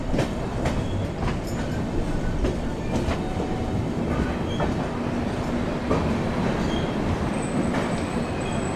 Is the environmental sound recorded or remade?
recorded